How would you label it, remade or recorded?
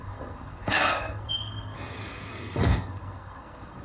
remade